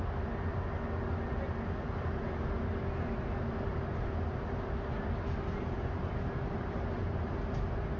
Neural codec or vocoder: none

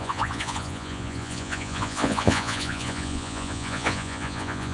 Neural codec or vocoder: vocoder, Vocos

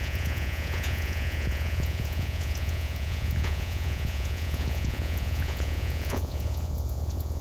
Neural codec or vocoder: vocoder, Vocos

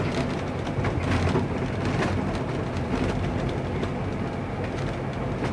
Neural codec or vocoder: none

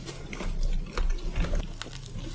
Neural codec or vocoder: none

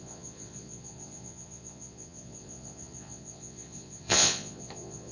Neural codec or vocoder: vocoder, Vocos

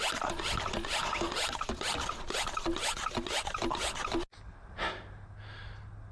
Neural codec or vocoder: none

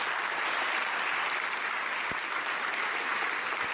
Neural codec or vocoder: none